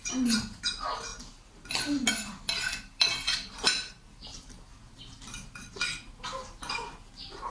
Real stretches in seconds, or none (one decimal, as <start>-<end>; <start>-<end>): 0.0-7.5